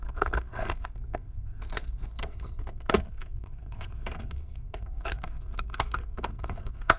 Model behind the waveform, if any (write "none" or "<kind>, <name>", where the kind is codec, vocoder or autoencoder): codec, SNAC